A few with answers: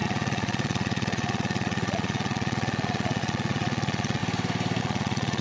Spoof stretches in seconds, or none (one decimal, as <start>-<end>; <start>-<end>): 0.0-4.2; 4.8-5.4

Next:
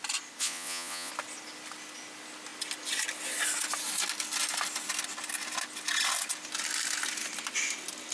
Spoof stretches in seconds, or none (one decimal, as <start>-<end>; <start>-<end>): 0.4-1.1

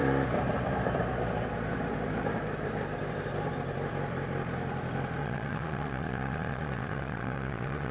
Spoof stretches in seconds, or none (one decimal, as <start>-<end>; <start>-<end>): 5.2-7.9

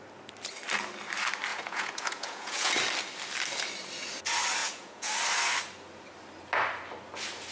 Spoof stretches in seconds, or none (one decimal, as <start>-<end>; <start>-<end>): 1.5-2.7; 4.6-5.1

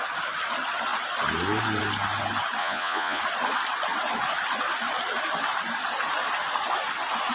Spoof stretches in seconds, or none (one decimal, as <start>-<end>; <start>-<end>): 2.6-3.2